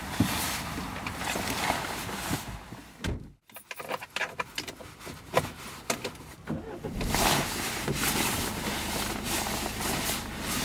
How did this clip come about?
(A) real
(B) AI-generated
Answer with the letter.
A